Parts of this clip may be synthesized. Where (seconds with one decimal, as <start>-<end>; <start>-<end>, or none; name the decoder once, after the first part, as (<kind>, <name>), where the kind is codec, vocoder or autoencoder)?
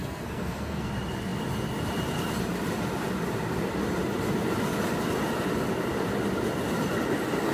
0.0-0.9 (codec, SNAC)